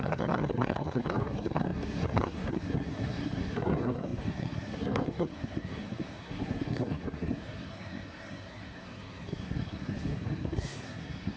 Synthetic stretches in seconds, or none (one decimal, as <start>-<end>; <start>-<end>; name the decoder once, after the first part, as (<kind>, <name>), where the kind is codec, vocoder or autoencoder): 0.0-11.4 (codec, SNAC)